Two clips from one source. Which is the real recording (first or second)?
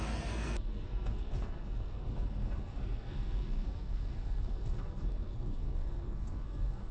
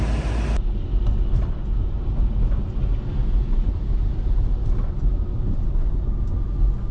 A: second